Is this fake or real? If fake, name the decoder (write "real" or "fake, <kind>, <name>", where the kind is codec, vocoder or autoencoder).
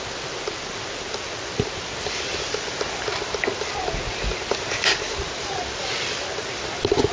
real